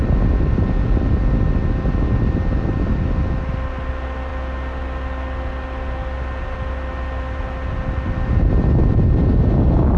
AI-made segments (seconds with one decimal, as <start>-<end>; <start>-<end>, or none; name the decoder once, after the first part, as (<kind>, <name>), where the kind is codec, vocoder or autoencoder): none

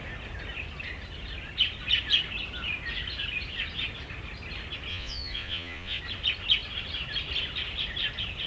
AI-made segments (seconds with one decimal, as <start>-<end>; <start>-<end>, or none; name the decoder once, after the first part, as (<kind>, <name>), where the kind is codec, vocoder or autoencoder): 4.9-6.0 (vocoder, Vocos)

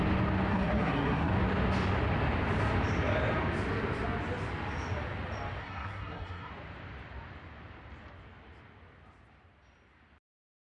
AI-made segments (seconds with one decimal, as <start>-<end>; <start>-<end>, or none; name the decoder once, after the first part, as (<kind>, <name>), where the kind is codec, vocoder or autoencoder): 0.5-1.3 (codec, SNAC); 5.6-6.5

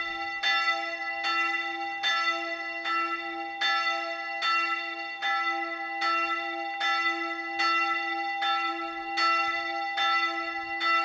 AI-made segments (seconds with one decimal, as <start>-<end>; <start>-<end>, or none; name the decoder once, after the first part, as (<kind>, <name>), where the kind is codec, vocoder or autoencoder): none

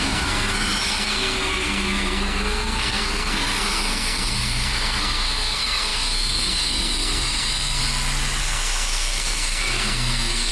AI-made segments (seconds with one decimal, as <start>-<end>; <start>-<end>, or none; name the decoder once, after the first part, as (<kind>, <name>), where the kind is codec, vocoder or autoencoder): 0.0-7.8 (codec, SNAC); 8.4-10.5